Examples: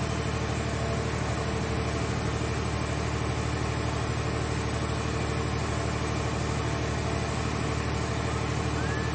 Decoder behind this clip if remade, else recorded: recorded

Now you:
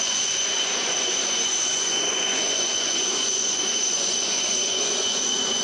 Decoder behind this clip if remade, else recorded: remade, vocoder, Vocos